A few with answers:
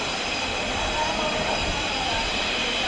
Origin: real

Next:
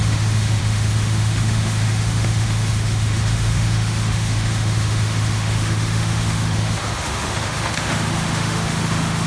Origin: fake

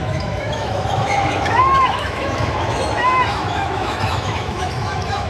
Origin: fake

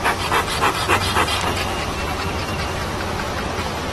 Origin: real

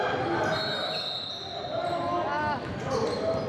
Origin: real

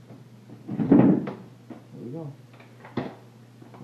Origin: real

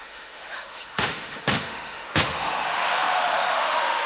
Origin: fake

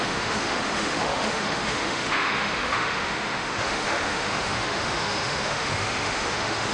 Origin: fake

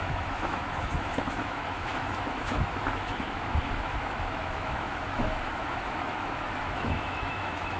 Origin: fake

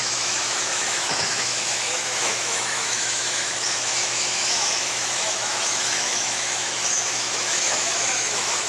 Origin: fake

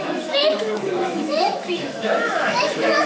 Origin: fake